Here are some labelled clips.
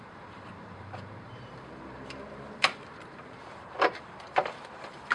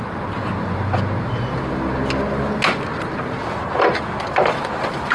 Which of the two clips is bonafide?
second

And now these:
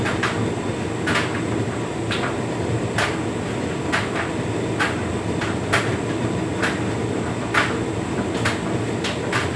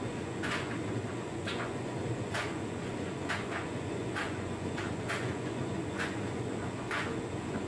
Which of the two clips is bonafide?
first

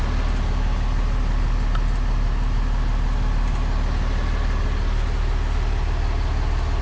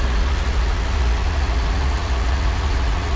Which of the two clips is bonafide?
first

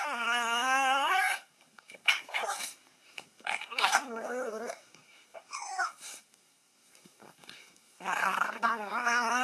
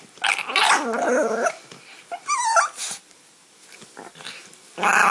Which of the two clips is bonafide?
second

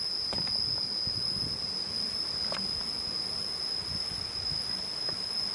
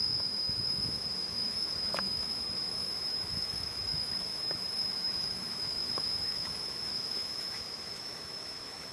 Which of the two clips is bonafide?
first